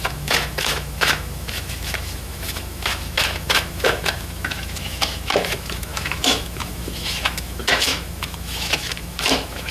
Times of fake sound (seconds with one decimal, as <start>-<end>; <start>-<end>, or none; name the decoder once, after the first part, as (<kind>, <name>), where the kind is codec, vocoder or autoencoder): 0.0-9.7 (autoencoder, DAC-VAE)